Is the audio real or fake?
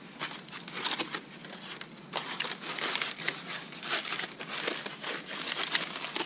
real